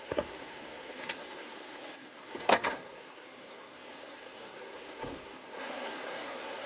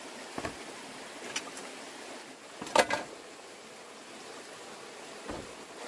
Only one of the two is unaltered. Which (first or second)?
second